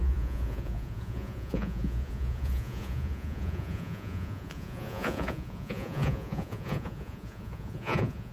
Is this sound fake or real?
fake